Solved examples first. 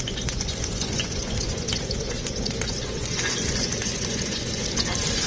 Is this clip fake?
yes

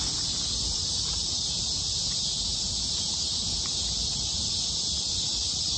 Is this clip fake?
no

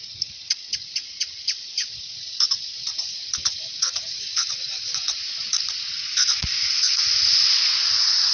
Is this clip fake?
yes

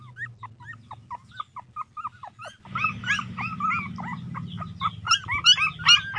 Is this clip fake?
no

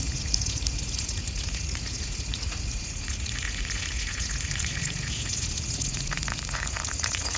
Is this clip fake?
yes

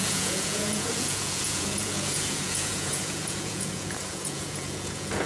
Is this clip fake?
yes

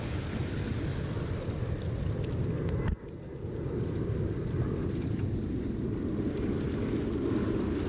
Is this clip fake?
no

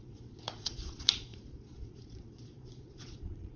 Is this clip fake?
yes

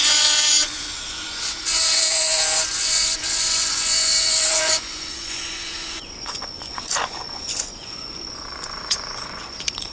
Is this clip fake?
yes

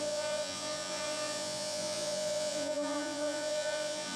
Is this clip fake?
yes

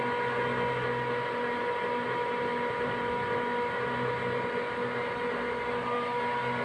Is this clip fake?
no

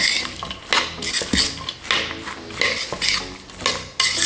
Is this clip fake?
no